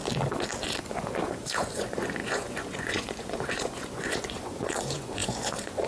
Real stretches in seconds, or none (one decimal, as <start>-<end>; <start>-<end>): 0.0-0.8